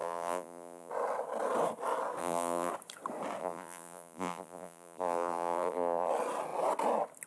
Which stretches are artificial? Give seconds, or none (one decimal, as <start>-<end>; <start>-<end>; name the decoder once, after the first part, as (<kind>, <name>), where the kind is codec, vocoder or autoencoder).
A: 0.0-0.9 (vocoder, BigVGAN v2); 2.2-2.7; 3.4-6.1